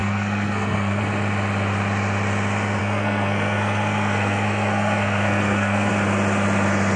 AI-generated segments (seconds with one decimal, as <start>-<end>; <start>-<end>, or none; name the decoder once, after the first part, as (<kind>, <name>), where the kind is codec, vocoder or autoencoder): 0.0-1.0 (codec, SNAC); 2.8-5.9